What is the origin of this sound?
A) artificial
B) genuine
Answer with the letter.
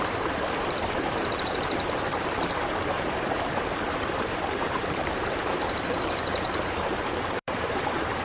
A